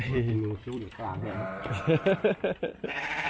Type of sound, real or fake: fake